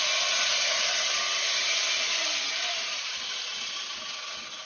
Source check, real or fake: real